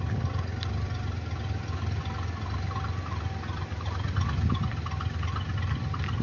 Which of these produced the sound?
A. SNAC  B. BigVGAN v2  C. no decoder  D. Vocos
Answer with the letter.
C